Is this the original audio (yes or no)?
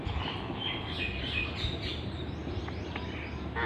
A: no